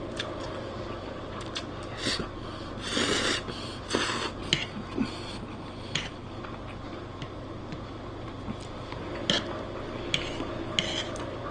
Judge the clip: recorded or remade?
recorded